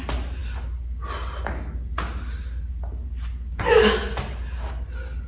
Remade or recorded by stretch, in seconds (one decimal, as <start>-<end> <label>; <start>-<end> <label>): 0.0-5.3 recorded